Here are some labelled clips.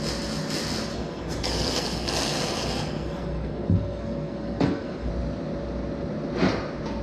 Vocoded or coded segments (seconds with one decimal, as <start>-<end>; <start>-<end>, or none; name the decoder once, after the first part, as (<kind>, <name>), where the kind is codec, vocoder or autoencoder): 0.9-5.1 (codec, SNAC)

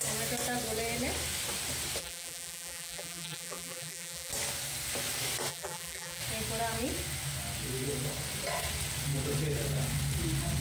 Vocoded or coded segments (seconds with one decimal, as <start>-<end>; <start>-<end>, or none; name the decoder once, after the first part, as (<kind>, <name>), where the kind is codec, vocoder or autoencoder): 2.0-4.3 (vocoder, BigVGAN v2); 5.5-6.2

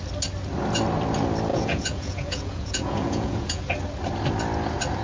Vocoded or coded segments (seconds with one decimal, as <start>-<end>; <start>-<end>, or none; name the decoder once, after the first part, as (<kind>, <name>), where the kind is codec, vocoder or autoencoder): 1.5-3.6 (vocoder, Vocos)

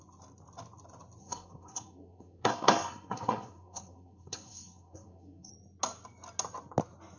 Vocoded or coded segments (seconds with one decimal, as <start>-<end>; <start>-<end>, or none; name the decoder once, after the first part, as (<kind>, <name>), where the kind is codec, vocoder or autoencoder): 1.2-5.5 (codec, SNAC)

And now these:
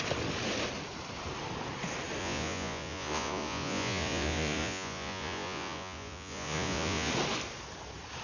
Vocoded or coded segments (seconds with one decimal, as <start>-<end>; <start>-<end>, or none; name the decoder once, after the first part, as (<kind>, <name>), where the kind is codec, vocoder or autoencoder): 2.2-7.1 (vocoder, Vocos)

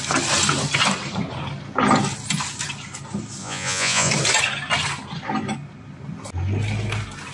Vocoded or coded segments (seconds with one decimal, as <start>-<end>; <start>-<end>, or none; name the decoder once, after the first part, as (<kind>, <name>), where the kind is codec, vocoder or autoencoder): 3.4-4.1 (vocoder, Vocos)